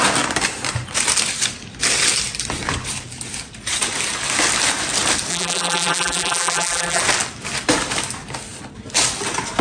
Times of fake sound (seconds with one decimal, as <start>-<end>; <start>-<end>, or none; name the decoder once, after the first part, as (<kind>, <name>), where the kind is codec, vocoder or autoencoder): 5.3-7.0 (vocoder, BigVGAN v2)